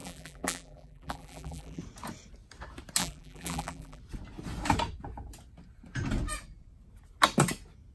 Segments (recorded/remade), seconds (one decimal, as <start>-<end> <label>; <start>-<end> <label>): 0.0-1.8 remade; 1.8-3.0 recorded; 3.0-4.0 remade; 4.0-7.9 recorded